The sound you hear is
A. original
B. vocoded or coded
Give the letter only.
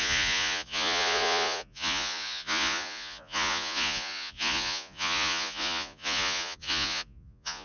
B